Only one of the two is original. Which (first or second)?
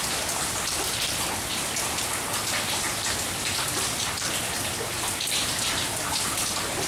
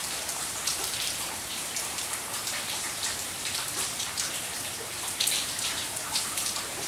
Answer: first